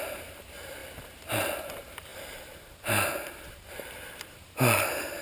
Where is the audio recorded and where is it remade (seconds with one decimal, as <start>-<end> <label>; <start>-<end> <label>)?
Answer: 0.0-0.8 remade; 0.8-1.6 recorded; 1.6-5.2 remade